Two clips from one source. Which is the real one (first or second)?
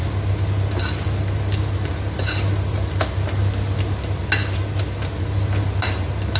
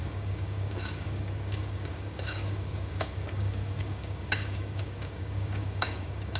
first